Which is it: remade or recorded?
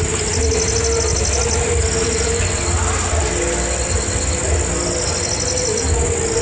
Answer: recorded